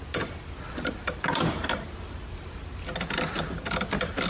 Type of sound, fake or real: real